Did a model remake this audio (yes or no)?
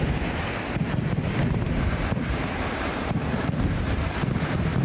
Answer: yes